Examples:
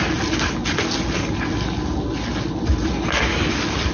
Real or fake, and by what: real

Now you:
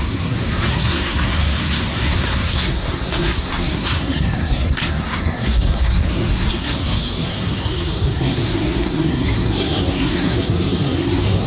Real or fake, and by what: fake, codec, SNAC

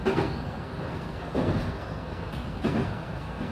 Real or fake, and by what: fake, codec, SNAC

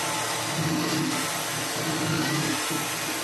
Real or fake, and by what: real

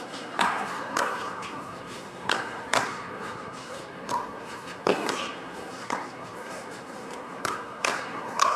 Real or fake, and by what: fake, codec, SNAC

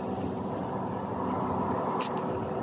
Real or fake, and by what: real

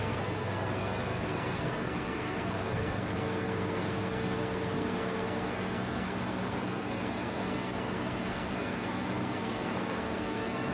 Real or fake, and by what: fake, codec, SNAC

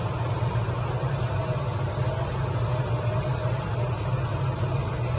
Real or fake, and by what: real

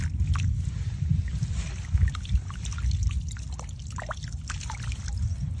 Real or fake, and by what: real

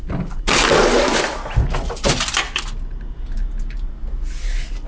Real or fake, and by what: real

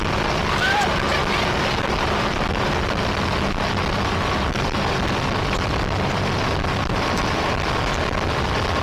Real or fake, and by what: fake, vocoder, BigVGAN v2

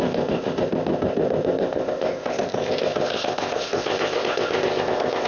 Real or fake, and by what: fake, codec, ZipCodec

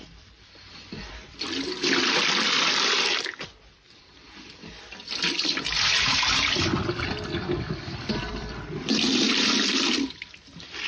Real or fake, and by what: fake, vocoder, BigVGAN v2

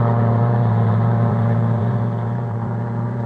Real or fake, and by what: fake, vocoder, Vocos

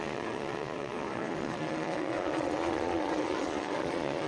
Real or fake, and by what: fake, vocoder, Vocos